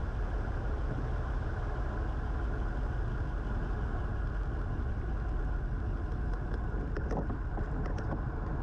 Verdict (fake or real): real